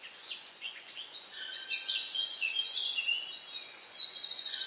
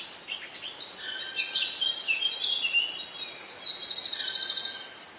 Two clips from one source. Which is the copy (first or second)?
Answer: first